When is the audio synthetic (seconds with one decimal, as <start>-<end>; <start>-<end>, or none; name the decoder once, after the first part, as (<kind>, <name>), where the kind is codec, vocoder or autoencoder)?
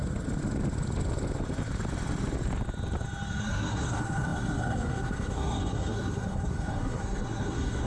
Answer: 3.4-7.9 (codec, SNAC)